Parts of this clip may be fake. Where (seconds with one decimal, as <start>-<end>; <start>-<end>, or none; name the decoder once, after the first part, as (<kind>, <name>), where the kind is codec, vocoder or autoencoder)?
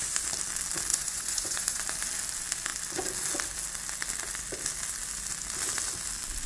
0.9-1.8 (vocoder, Vocos)